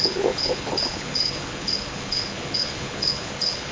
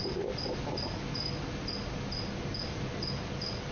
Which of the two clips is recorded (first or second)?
second